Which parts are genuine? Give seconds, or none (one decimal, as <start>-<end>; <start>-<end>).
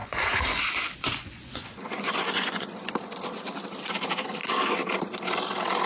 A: 0.6-1.0; 2.8-5.9